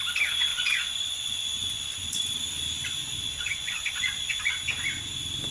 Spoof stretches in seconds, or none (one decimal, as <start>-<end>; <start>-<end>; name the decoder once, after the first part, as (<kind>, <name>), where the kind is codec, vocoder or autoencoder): 0.5-2.2 (vocoder, Vocos); 3.0-4.4